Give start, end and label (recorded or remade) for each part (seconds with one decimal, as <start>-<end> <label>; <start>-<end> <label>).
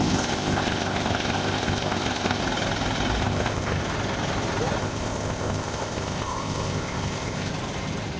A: 0.0-2.4 remade; 2.4-3.2 recorded; 3.2-3.8 remade; 3.8-4.8 recorded; 4.8-7.5 remade; 7.5-8.2 recorded